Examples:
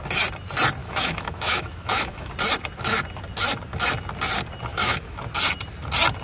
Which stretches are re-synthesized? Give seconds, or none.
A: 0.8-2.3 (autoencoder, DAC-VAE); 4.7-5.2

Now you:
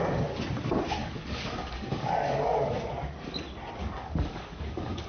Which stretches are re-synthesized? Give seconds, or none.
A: 1.0-2.8 (codec, DAC); 3.8-5.1

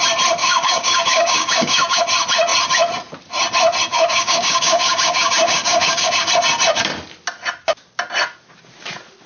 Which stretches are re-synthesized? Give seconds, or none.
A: 0.4-2.0 (codec, DAC); 3.9-6.3